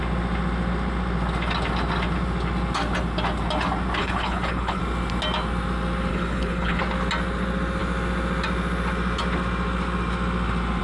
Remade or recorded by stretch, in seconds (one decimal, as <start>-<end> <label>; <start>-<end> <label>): 0.0-4.0 recorded; 4.0-4.8 remade; 4.8-6.1 recorded; 6.1-6.8 remade; 6.8-10.8 recorded